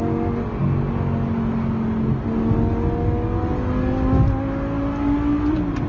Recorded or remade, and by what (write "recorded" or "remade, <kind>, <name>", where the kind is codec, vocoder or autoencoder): recorded